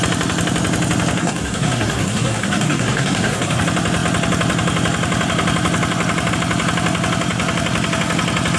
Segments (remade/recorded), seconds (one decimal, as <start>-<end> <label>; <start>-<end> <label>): 0.0-1.2 recorded; 1.2-3.6 remade; 3.6-8.6 recorded